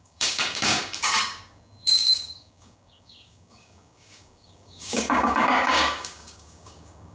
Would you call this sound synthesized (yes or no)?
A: yes